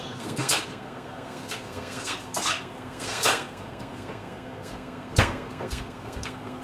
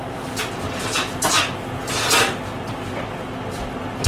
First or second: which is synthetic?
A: first